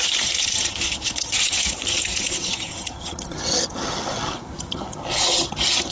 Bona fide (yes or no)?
no